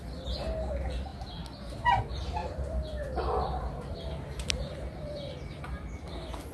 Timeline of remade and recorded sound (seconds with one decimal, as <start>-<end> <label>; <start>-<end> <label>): 0.0-2.4 recorded; 2.4-5.6 remade; 5.6-6.5 recorded